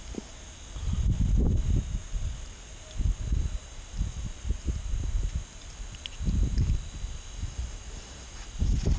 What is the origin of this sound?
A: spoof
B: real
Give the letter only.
B